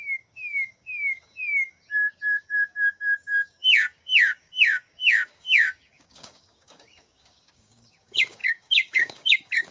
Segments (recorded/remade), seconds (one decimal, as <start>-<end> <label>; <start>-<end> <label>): 0.0-9.7 remade